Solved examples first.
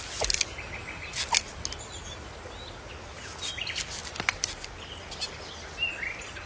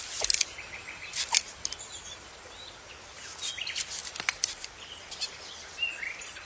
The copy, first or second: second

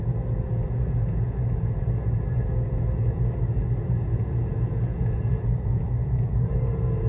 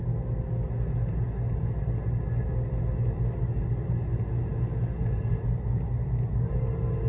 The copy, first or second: first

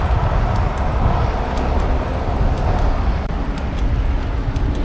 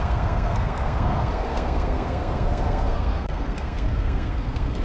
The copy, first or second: second